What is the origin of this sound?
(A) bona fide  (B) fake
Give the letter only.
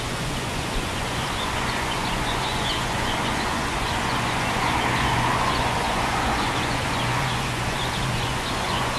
B